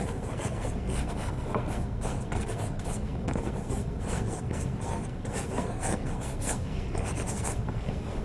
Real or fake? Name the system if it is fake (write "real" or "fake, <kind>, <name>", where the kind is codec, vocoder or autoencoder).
fake, codec, SNAC